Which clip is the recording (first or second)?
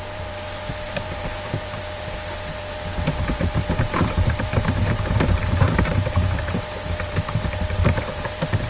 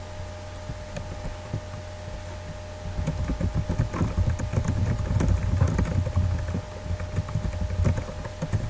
second